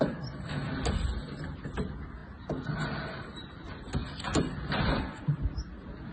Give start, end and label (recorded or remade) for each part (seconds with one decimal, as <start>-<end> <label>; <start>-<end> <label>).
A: 0.0-6.1 recorded